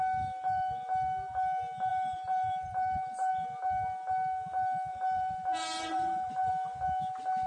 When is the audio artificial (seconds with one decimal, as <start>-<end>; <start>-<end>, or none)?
1.9-3.3; 4.9-6.5